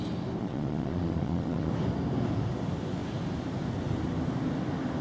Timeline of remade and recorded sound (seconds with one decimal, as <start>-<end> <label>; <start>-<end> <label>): 0.0-0.4 recorded; 0.4-1.7 remade; 1.7-5.0 recorded